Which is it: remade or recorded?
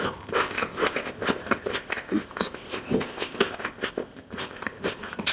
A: remade